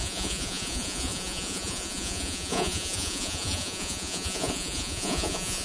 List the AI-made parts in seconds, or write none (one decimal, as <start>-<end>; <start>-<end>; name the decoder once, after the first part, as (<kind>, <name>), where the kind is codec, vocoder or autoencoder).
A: 0.0-5.6 (vocoder, Vocos)